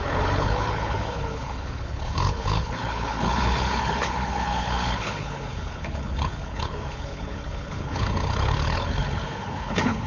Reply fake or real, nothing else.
fake